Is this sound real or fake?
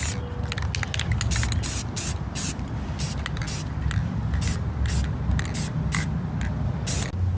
real